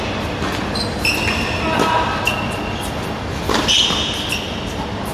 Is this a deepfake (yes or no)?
no